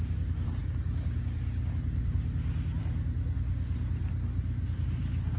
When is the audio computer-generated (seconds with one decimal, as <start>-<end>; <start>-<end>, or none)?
none